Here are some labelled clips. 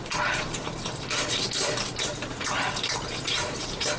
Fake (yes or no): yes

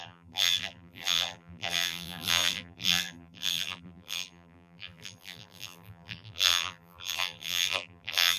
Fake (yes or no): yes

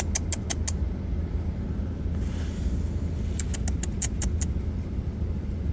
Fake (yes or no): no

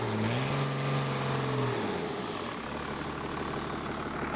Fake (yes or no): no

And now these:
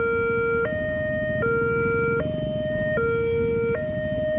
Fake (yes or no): no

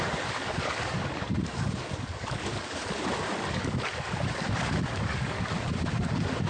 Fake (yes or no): yes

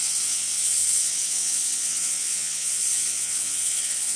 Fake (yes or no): yes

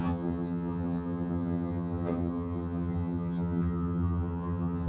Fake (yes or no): yes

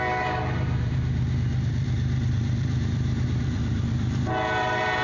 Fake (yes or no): yes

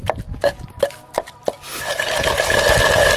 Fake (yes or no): no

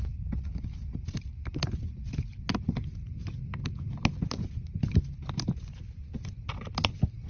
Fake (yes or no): no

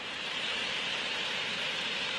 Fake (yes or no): yes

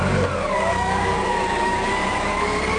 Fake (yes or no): yes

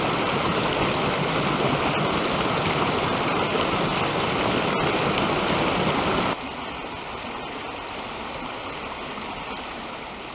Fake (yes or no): no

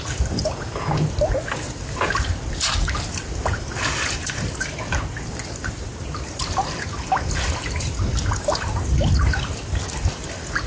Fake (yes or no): no